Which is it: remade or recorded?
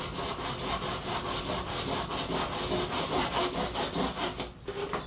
recorded